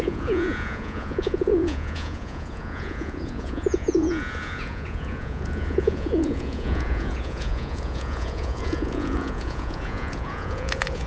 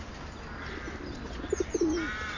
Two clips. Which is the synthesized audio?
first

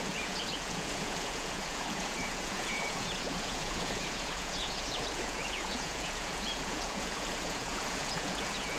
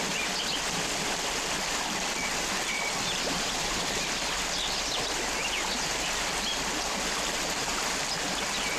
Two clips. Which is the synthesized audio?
first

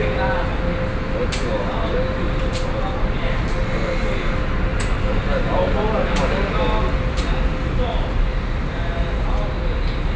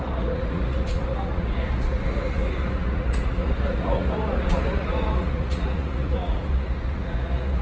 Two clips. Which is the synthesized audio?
second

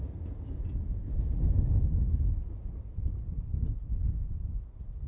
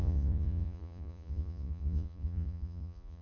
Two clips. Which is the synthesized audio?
second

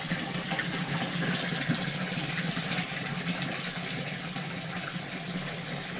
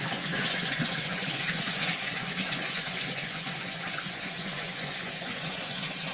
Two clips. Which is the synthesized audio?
second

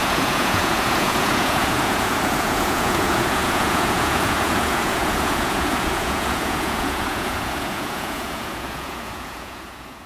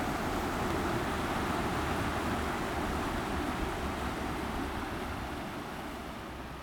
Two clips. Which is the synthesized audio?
first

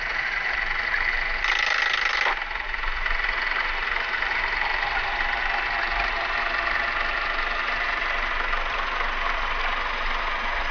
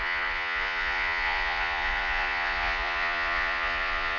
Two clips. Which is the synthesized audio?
second